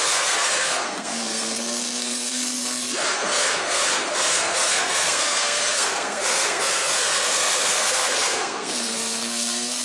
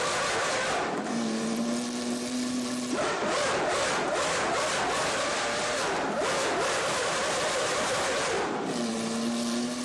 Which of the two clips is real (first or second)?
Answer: second